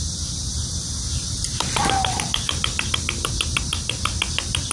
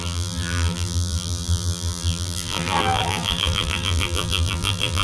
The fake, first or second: second